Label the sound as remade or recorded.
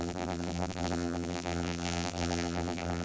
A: remade